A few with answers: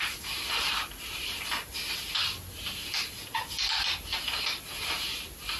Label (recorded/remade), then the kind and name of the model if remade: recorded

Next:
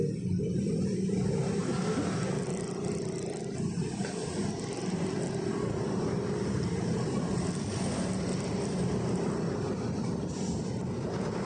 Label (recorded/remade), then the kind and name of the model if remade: recorded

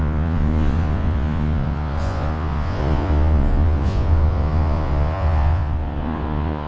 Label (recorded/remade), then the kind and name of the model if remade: remade, vocoder, Vocos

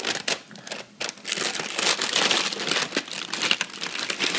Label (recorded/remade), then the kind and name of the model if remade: recorded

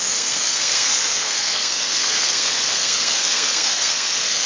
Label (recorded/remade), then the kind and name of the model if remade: remade, codec, SNAC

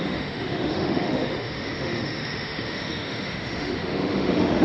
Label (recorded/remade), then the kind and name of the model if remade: remade, autoencoder, DAC-VAE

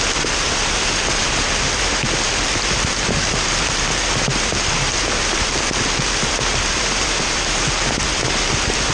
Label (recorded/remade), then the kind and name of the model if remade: remade, vocoder, BigVGAN v2